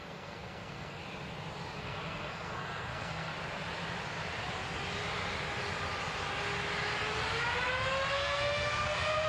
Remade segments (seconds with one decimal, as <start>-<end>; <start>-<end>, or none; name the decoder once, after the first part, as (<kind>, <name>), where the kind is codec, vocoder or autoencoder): 0.0-1.0 (codec, SNAC); 1.8-3.3; 8.1-9.3